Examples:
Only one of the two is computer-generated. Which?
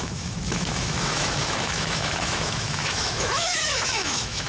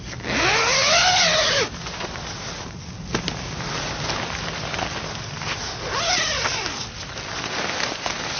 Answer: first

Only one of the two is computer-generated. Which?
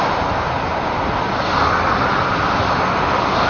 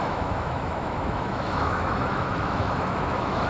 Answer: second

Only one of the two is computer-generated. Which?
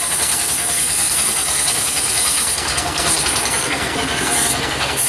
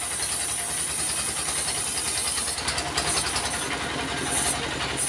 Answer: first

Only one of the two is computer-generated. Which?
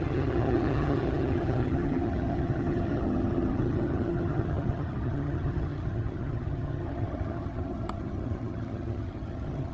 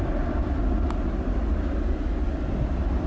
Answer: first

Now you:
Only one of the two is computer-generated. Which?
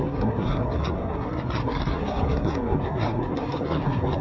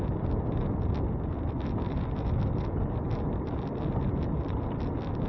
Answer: first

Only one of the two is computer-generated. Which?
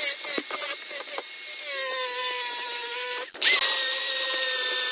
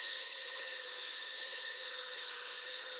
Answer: second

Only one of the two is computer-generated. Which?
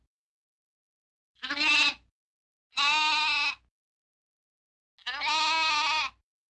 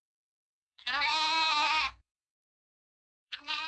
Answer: second